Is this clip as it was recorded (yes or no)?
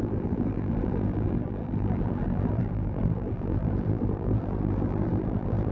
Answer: no